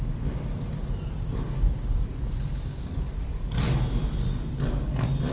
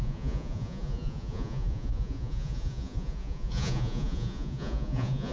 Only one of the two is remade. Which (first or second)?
second